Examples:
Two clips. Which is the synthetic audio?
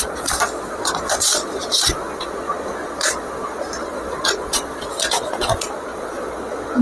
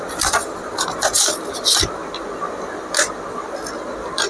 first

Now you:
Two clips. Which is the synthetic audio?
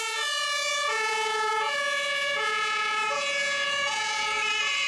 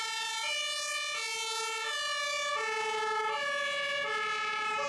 first